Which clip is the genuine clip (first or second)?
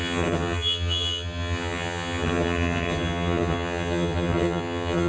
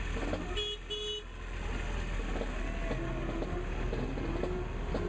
second